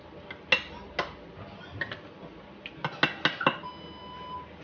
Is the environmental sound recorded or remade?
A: recorded